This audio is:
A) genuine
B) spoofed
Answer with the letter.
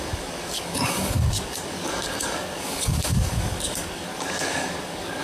B